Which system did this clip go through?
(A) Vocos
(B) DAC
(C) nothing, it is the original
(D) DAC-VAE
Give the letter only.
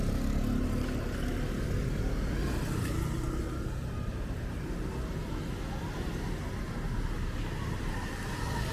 C